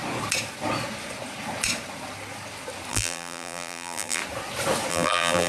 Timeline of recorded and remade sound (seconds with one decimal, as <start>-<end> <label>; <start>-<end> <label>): 0.0-2.9 recorded; 2.9-4.2 remade; 4.2-4.9 recorded; 4.9-5.5 remade